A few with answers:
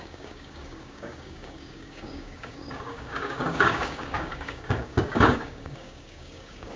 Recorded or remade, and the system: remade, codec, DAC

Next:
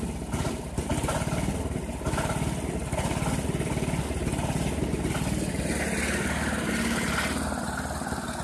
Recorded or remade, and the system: recorded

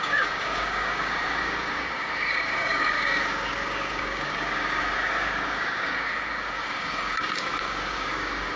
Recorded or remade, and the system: remade, codec, DAC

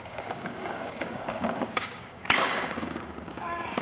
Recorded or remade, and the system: remade, codec, DAC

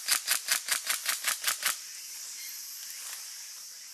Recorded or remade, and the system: recorded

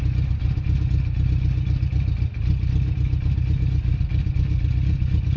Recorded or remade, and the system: recorded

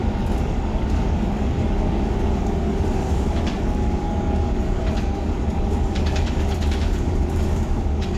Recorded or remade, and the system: remade, codec, DAC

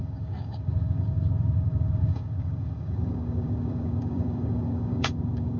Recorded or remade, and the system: remade, codec, DAC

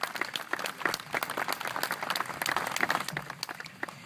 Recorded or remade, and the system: recorded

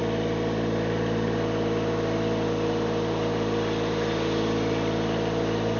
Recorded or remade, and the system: recorded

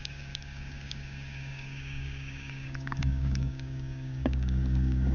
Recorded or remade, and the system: remade, codec, DAC